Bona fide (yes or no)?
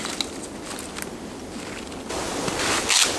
yes